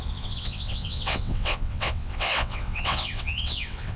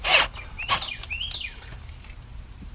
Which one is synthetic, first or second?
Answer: first